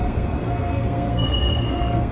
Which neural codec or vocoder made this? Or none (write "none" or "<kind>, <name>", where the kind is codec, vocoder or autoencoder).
codec, SNAC